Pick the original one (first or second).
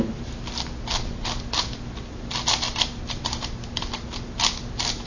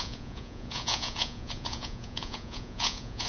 first